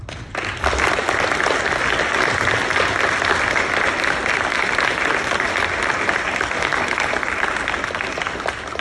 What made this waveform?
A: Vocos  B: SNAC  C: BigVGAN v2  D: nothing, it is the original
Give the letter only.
D